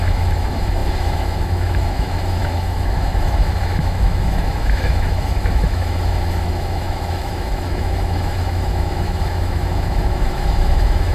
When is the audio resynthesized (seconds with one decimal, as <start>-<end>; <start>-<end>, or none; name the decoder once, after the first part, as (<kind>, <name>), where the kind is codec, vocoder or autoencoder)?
0.0-11.1 (autoencoder, DAC-VAE)